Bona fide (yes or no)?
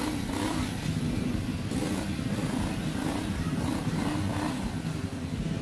yes